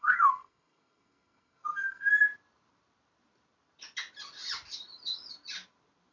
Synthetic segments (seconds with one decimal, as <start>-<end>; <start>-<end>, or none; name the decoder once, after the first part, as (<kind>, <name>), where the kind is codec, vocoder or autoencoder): 0.0-2.1 (codec, SNAC)